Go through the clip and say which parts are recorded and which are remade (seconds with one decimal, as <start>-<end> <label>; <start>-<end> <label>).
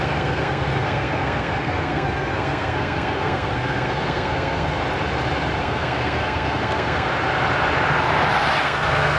0.0-4.8 remade; 4.8-5.6 recorded; 5.6-7.1 remade; 7.1-8.6 recorded; 8.6-9.2 remade